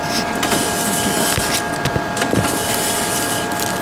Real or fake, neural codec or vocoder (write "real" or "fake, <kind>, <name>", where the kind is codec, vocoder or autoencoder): real